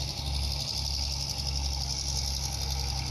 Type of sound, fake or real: real